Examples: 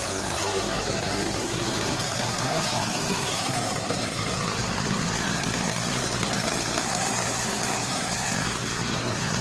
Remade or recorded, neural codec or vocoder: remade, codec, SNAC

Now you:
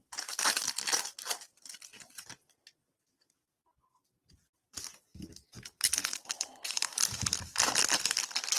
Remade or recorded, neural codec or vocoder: recorded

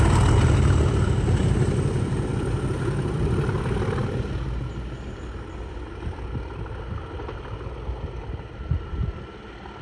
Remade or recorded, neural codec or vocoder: recorded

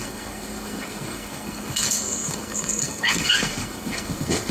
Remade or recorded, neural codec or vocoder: remade, codec, SNAC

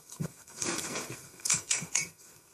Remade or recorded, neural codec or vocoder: remade, codec, SNAC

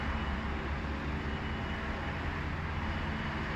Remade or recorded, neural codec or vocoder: recorded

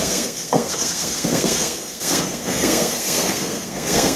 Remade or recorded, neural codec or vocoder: remade, codec, SNAC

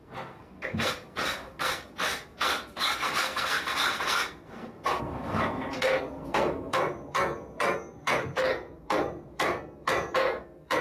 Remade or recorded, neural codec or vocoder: remade, codec, SNAC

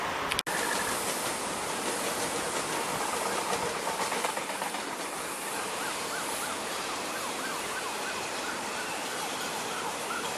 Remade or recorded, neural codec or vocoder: recorded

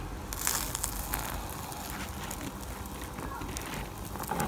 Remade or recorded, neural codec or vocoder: recorded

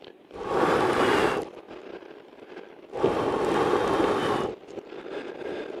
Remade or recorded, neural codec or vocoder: recorded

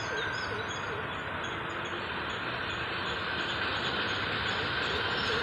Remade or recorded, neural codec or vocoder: recorded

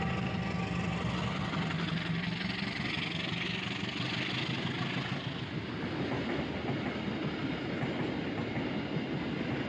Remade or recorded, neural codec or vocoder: recorded